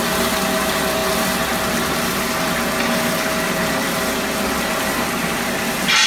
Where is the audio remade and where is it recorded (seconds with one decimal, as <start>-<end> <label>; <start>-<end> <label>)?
0.0-6.1 recorded